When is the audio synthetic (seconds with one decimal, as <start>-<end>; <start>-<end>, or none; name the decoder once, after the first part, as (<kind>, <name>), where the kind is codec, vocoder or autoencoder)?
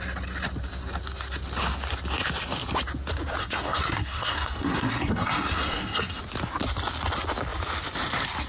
3.4-6.2 (codec, SNAC)